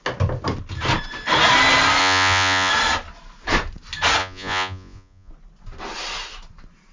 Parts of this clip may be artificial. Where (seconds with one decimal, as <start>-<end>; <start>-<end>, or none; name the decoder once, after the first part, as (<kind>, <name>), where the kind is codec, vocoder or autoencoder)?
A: 2.0-2.7 (vocoder, Vocos); 4.2-5.3